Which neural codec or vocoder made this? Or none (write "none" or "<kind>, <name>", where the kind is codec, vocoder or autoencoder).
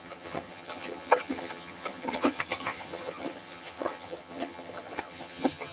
vocoder, HiFi-GAN